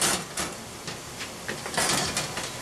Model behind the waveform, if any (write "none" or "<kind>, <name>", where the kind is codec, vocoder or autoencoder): none